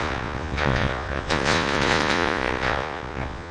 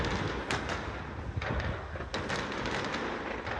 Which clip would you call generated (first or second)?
first